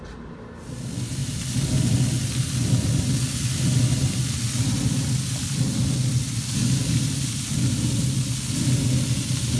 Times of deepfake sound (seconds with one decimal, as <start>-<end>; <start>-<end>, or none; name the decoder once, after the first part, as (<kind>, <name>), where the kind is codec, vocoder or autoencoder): none